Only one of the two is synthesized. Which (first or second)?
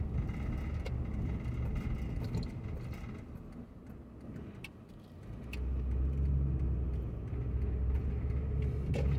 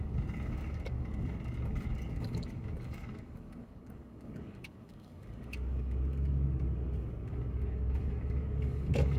second